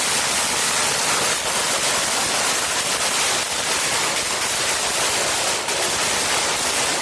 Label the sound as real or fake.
real